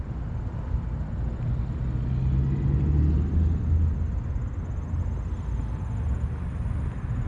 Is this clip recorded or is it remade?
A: recorded